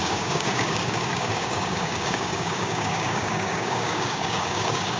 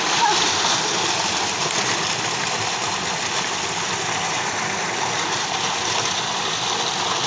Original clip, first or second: second